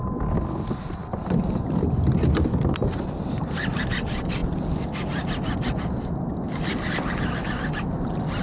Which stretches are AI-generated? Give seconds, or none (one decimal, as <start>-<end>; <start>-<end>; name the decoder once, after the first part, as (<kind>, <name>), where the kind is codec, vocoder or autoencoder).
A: none